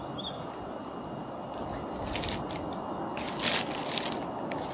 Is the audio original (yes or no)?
yes